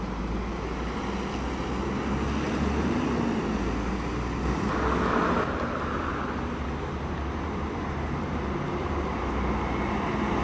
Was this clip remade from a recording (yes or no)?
no